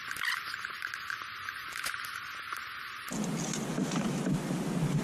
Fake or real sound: real